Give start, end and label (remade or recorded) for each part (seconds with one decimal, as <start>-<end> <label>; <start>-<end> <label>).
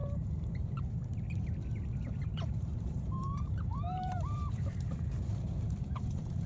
0.0-0.8 remade; 0.8-2.3 recorded; 2.3-6.5 remade